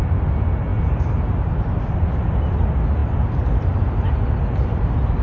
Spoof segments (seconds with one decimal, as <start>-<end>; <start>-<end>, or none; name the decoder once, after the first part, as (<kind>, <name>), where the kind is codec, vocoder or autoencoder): none